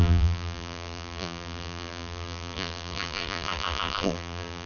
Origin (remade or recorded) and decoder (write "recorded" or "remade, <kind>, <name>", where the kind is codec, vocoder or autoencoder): remade, vocoder, BigVGAN v2